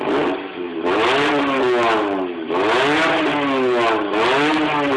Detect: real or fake real